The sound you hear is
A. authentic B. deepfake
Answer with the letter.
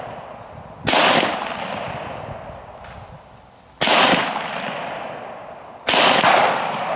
A